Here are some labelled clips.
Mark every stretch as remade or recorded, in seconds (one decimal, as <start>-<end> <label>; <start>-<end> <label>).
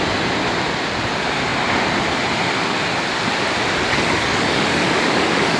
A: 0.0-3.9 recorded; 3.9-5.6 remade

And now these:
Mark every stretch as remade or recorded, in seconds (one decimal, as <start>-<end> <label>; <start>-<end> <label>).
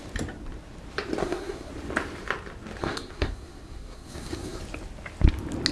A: 0.0-1.2 recorded; 1.2-1.7 remade; 1.7-2.8 recorded; 2.8-4.6 remade; 4.6-5.7 recorded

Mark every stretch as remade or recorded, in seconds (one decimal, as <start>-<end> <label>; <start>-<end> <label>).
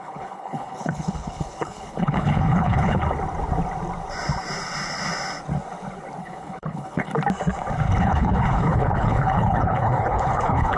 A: 0.0-3.0 remade; 3.0-6.2 recorded; 6.2-7.1 remade; 7.1-8.0 recorded; 8.0-10.8 remade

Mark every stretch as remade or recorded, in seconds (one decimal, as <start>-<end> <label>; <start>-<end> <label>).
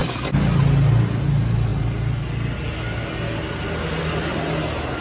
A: 0.0-5.0 recorded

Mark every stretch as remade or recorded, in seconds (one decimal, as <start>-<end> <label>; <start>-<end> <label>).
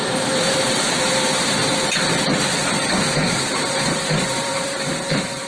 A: 0.0-1.6 remade; 1.6-3.3 recorded; 3.3-5.5 remade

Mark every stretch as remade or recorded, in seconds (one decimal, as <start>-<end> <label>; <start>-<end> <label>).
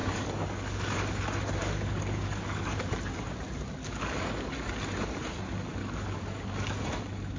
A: 0.0-1.2 remade; 1.2-1.6 recorded; 1.6-2.9 remade; 2.9-3.8 recorded; 3.8-4.7 remade; 4.7-5.8 recorded; 5.8-6.8 remade; 6.8-7.4 recorded